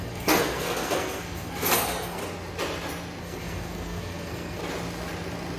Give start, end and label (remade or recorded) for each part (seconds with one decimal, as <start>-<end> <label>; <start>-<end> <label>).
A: 0.0-2.2 remade; 2.2-3.2 recorded; 3.2-4.6 remade; 4.6-5.6 recorded